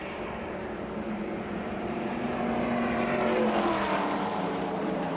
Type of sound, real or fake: fake